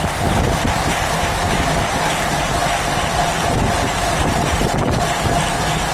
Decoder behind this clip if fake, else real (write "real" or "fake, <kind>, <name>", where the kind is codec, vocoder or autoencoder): real